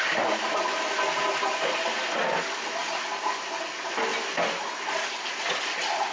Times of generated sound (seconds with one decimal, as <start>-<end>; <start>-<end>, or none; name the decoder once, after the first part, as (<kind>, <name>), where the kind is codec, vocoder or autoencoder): none